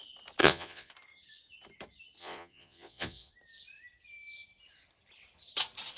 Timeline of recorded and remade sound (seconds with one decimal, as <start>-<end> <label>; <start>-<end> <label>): 0.0-0.4 recorded; 0.4-0.9 remade; 0.9-2.2 recorded; 2.2-3.3 remade; 3.3-6.0 recorded